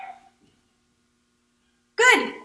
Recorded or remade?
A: recorded